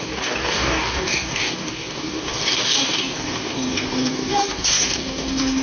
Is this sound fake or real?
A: fake